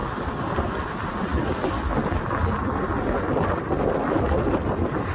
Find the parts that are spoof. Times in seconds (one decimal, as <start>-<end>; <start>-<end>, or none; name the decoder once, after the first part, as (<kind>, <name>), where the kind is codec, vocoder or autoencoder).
none